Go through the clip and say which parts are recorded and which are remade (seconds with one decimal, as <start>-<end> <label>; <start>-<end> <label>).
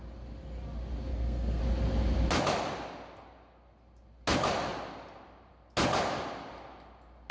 0.0-1.1 recorded; 1.1-1.6 remade; 1.6-7.3 recorded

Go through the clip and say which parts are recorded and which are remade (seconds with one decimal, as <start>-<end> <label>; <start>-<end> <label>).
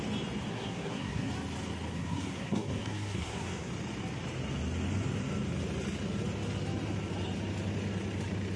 0.0-0.5 recorded; 0.5-1.3 remade; 1.3-1.9 recorded; 1.9-3.7 remade; 3.7-8.6 recorded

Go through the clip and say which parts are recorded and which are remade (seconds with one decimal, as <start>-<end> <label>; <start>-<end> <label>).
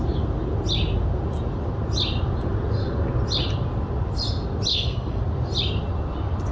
0.0-4.7 recorded; 4.7-5.2 remade; 5.2-6.5 recorded